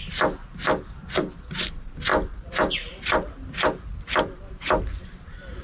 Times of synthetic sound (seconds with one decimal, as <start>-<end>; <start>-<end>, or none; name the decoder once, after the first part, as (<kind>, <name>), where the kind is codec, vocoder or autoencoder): none